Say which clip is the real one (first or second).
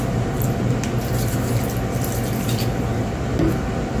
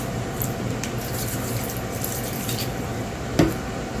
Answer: first